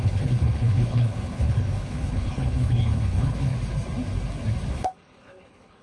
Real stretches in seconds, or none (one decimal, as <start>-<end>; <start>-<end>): 3.5-4.7